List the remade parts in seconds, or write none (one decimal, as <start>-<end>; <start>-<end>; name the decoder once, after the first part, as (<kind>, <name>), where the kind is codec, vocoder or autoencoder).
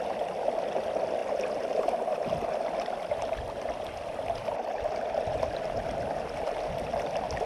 none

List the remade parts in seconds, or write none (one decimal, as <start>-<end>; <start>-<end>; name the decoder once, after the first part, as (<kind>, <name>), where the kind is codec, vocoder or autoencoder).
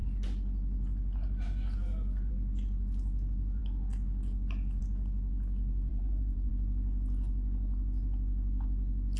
5.9-6.5 (vocoder, BigVGAN v2)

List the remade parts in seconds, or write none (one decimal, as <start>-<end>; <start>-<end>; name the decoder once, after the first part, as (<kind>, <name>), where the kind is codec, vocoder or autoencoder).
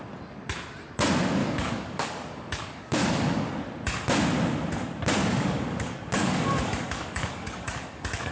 1.4-3.5 (codec, DAC); 5.2-8.3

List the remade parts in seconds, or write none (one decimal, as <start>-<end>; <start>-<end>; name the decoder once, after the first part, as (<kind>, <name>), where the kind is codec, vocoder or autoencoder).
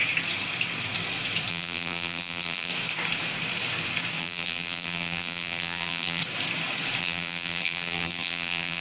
1.5-2.7 (vocoder, BigVGAN v2); 4.2-6.2; 7.0-8.8